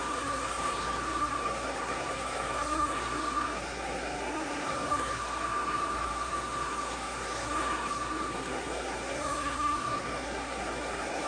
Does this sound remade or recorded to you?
remade